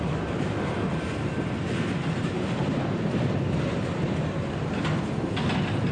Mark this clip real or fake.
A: real